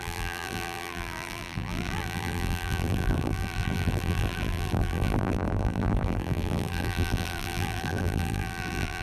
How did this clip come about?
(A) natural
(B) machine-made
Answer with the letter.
B